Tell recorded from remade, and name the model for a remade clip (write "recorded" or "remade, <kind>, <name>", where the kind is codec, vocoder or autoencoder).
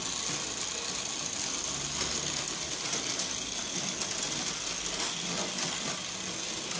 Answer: recorded